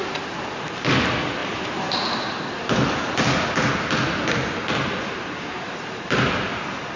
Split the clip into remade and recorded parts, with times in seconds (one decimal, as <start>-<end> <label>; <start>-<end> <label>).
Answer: 0.0-7.0 recorded